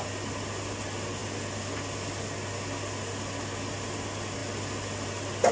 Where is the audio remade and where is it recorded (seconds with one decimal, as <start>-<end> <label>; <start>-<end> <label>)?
0.0-5.5 recorded

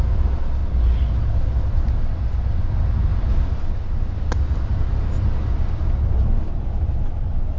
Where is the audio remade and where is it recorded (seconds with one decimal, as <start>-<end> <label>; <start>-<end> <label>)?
0.0-7.6 recorded

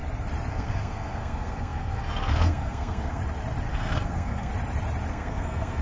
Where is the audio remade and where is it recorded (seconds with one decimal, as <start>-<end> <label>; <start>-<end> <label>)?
0.0-0.5 recorded; 0.5-3.2 remade; 3.2-3.7 recorded; 3.7-4.5 remade; 4.5-5.1 recorded; 5.1-5.8 remade

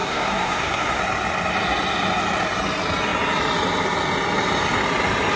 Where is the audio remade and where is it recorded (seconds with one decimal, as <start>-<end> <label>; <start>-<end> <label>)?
0.0-1.0 remade; 1.0-5.4 recorded

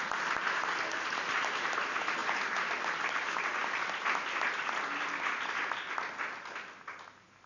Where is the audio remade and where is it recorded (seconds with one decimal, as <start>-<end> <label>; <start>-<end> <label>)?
0.0-7.5 recorded